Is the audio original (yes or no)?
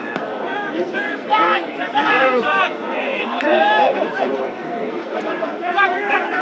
no